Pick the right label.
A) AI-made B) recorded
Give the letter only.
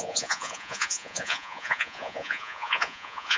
A